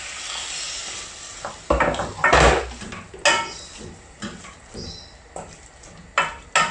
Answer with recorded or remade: recorded